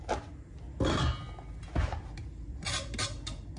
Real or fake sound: real